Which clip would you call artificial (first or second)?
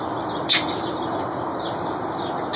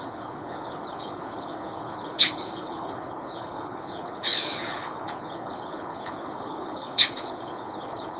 second